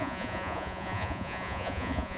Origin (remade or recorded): remade